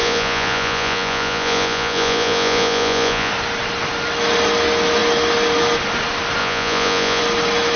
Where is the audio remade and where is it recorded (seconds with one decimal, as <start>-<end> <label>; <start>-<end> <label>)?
0.0-3.3 remade; 3.3-6.4 recorded; 6.4-7.2 remade; 7.2-7.8 recorded